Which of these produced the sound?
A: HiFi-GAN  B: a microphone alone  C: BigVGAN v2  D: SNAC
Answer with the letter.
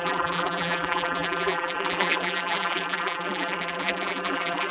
C